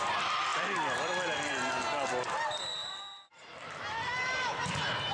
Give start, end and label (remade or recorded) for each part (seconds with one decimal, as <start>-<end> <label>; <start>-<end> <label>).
0.0-0.5 recorded; 0.5-1.5 remade; 1.5-5.1 recorded